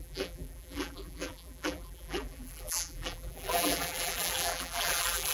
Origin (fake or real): fake